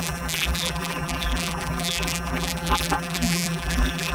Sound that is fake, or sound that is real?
fake